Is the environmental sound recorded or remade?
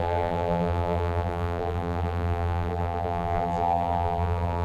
remade